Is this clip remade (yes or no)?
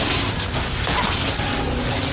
no